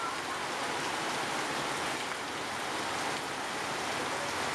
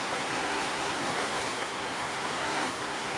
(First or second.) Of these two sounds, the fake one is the second